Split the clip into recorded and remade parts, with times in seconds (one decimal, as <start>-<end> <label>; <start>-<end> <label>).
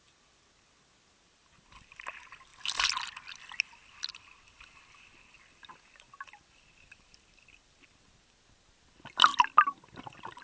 0.0-10.4 recorded